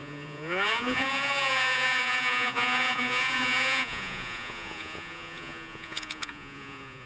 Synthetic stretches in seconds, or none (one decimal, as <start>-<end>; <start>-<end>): 0.0-7.1